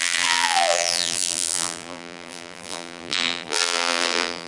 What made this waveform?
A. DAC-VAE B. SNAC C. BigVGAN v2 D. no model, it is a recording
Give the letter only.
C